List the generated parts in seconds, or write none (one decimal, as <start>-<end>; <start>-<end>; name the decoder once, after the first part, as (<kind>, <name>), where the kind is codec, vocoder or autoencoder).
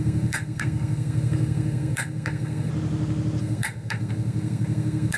0.0-2.7 (codec, SNAC); 3.4-5.2